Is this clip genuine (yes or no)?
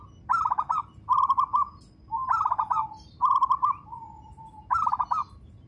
yes